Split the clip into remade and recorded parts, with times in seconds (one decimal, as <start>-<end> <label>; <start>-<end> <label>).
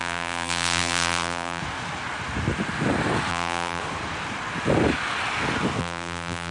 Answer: 0.0-1.6 remade; 1.6-3.3 recorded; 3.3-3.8 remade; 3.8-5.8 recorded; 5.8-6.5 remade